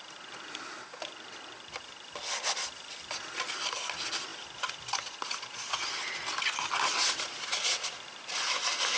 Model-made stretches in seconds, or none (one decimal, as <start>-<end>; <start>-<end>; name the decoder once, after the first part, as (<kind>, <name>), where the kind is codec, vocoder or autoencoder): none